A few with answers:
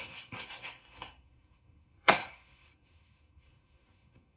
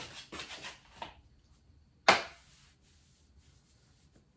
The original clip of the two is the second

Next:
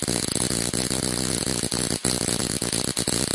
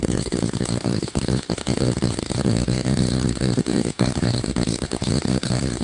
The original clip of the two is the first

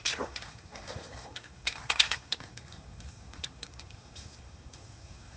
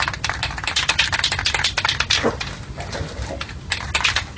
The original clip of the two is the second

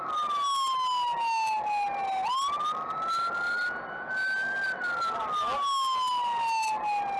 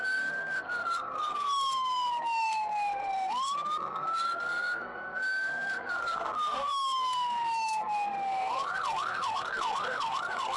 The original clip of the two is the first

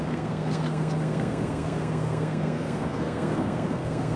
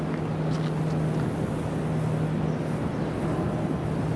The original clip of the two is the second